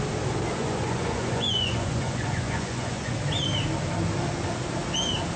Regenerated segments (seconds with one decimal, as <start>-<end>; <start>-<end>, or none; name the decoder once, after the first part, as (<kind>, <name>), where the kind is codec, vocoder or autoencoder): 0.6-3.2 (vocoder, Vocos)